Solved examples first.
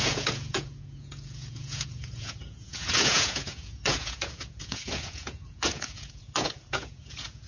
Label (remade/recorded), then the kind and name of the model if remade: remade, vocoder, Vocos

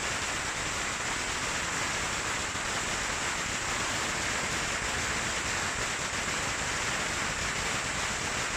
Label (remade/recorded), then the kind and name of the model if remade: recorded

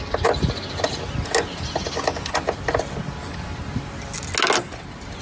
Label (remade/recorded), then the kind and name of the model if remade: recorded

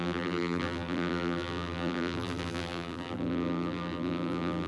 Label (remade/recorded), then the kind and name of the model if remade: remade, vocoder, BigVGAN v2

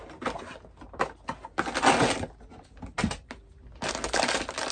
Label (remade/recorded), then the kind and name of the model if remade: recorded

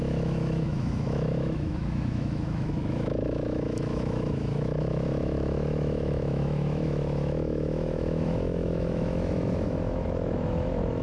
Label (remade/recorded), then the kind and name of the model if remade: remade, autoencoder, DAC-VAE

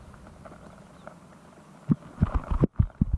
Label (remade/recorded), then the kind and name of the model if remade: recorded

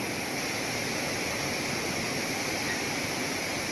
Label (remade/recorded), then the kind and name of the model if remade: remade, vocoder, BigVGAN v2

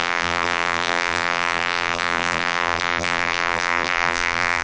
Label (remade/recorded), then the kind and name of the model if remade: remade, vocoder, BigVGAN v2